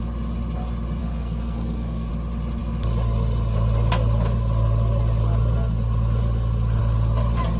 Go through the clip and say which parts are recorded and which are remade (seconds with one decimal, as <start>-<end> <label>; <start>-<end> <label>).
0.0-1.0 recorded; 1.0-2.1 remade; 2.1-7.6 recorded